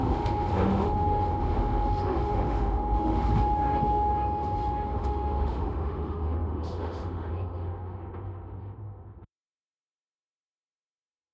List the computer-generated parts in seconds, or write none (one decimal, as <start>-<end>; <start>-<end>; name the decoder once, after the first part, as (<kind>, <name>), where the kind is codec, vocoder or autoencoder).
0.0-11.3 (autoencoder, DAC-VAE)